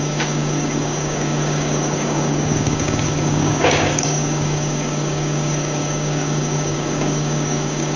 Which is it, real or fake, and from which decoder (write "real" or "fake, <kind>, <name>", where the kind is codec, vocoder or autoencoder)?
fake, codec, DAC